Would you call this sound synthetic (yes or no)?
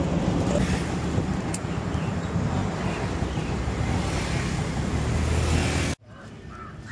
no